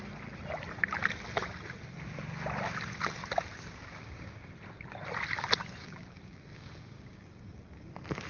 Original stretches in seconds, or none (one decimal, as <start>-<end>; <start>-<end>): 0.0-4.0; 4.5-5.8; 7.9-8.3